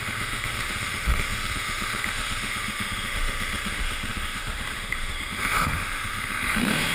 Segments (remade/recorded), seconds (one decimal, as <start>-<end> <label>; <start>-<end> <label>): 0.0-6.9 remade